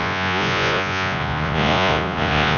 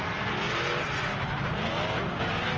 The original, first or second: second